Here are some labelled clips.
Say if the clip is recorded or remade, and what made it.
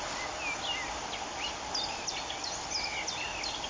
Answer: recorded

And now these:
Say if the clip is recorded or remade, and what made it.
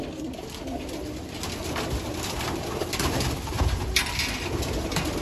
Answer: recorded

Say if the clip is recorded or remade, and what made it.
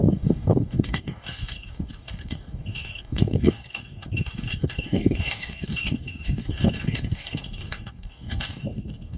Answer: remade, codec, DAC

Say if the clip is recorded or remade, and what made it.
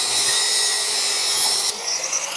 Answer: remade, vocoder, Vocos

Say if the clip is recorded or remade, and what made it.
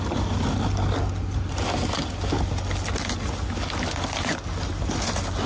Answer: recorded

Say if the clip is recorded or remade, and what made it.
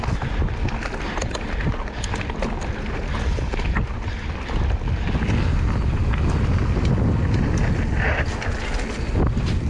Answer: recorded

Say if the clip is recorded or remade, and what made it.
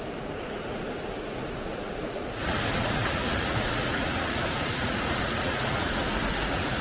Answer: remade, vocoder, Vocos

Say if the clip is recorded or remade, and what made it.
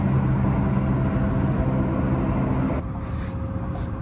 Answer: recorded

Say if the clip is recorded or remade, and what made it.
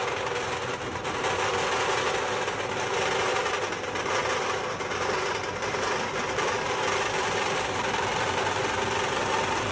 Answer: recorded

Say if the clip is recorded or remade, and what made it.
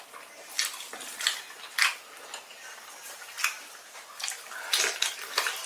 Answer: recorded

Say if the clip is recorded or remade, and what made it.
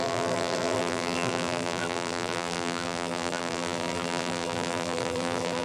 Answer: remade, vocoder, BigVGAN v2